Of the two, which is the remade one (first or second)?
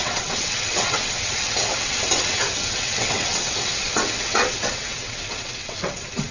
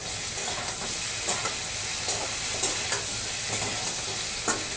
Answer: first